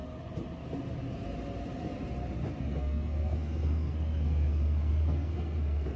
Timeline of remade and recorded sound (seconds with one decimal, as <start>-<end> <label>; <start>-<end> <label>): 0.0-2.6 recorded; 2.6-6.0 remade